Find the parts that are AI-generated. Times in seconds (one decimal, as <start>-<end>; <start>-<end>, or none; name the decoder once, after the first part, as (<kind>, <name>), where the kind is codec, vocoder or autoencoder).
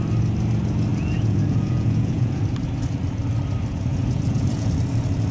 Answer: 0.9-2.4 (vocoder, Vocos); 3.9-4.7